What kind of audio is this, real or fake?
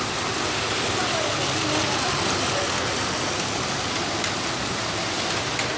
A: real